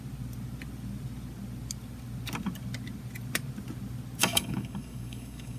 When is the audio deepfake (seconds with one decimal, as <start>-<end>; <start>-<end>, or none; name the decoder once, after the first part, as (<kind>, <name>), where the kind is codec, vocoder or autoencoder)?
4.2-5.6 (codec, DAC)